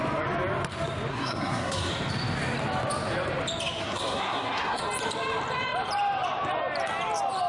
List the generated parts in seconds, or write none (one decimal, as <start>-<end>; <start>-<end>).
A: 1.1-1.9; 3.8-4.8